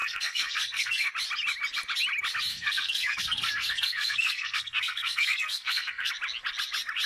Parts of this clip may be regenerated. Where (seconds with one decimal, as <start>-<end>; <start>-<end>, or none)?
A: 0.0-1.1; 2.5-6.1